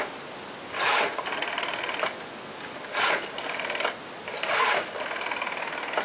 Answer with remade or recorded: recorded